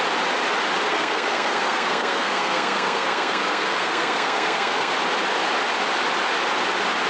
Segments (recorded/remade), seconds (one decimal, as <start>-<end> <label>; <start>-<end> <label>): 0.0-0.9 recorded; 0.9-4.9 remade; 4.9-7.1 recorded